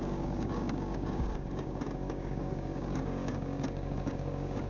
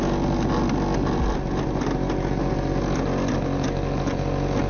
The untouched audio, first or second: second